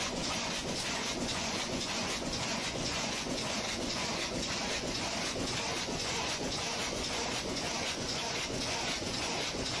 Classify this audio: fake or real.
fake